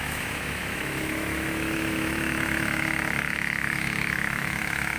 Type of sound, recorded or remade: remade